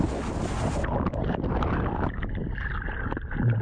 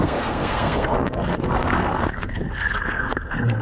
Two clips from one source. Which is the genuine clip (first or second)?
first